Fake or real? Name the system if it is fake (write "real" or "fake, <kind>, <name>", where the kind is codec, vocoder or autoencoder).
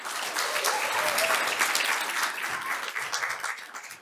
real